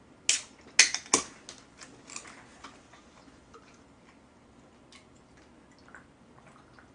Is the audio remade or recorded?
recorded